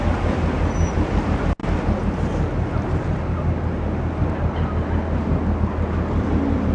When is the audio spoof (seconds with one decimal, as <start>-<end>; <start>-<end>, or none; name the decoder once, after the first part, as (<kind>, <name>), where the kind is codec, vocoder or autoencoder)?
none